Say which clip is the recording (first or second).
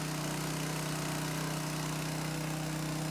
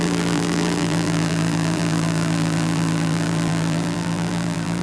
first